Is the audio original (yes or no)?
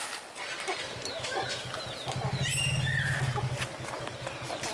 yes